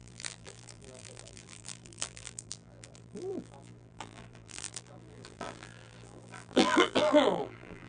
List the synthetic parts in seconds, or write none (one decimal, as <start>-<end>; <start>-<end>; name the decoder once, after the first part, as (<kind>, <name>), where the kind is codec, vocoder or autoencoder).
0.0-7.9 (vocoder, BigVGAN v2)